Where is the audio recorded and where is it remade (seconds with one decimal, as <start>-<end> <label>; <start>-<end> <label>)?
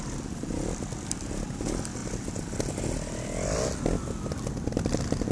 0.0-5.3 recorded